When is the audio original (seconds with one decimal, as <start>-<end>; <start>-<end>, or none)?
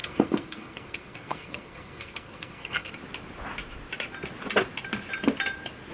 2.9-5.9